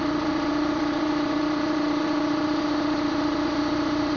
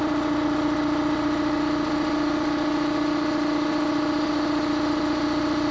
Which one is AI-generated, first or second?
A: first